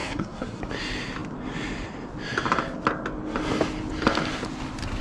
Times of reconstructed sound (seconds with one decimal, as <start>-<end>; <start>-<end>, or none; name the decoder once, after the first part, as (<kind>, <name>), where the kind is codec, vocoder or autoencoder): 0.0-0.6 (codec, SNAC)

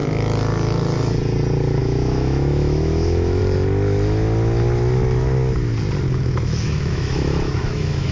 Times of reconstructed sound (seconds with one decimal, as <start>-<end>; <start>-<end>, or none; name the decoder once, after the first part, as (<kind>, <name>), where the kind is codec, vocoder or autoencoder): 1.8-3.4 (autoencoder, DAC-VAE); 6.1-8.1